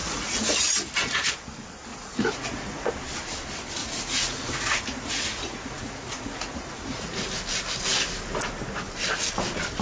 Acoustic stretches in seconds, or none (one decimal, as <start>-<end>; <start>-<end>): 1.3-1.9; 2.9-3.8; 7.3-9.8